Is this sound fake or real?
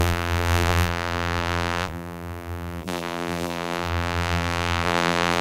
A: fake